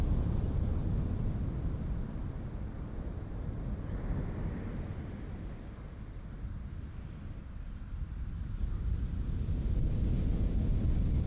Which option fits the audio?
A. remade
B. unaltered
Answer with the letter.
B